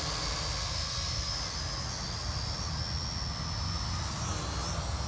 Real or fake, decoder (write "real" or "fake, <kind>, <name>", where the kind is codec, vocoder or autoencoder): real